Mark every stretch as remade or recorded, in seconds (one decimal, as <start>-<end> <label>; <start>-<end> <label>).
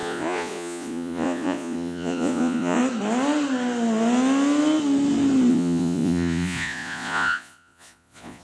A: 0.0-2.8 remade; 2.8-5.5 recorded; 5.5-8.4 remade